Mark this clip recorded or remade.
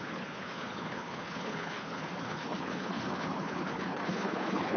remade